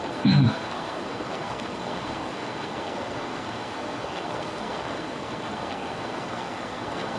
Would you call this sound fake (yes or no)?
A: yes